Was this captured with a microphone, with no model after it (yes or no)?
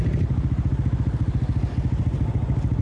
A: yes